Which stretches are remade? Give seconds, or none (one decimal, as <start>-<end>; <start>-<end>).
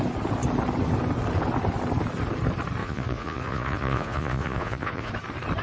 2.8-5.1